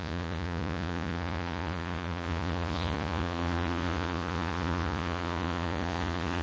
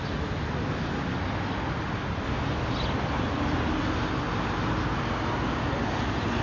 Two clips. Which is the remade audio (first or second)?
first